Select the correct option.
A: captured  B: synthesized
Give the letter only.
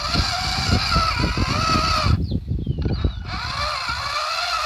A